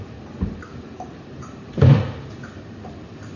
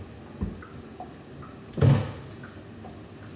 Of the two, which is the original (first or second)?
second